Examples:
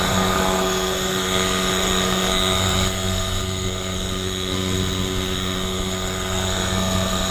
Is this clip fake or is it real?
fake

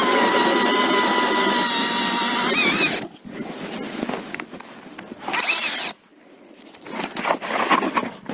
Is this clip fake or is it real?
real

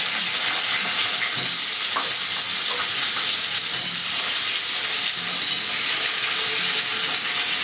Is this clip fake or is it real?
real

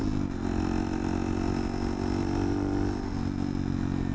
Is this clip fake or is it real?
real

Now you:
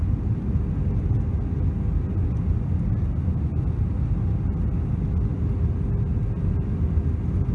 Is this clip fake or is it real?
real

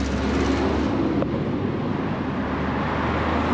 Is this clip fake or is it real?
real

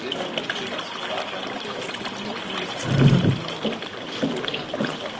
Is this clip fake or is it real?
real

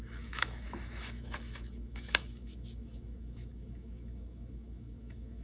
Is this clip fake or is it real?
fake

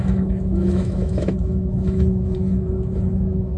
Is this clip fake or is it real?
fake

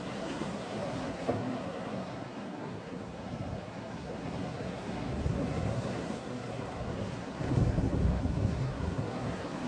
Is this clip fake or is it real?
fake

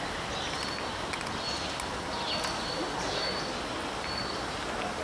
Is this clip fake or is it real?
real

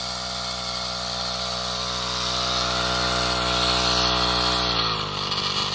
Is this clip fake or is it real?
real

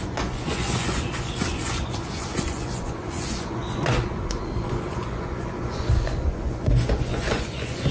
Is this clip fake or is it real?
fake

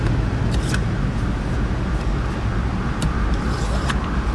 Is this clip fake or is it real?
real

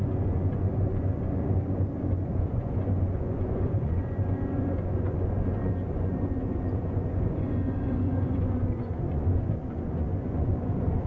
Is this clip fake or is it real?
fake